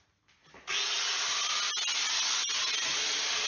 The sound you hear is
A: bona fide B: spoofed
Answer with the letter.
A